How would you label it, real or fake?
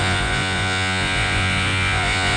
fake